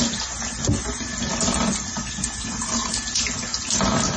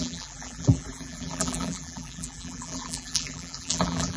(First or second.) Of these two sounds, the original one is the first